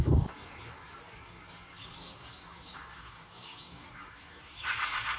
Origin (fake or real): fake